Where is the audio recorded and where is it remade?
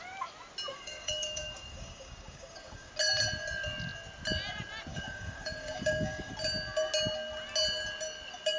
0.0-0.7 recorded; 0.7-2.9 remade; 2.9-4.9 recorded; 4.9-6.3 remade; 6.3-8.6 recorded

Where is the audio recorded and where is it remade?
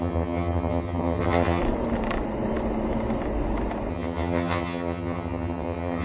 0.0-1.6 remade; 1.6-3.9 recorded; 3.9-6.0 remade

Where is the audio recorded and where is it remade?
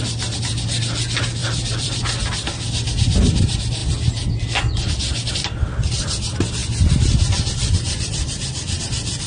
0.0-1.4 recorded; 1.4-2.0 remade; 2.0-6.6 recorded; 6.6-8.8 remade; 8.8-9.3 recorded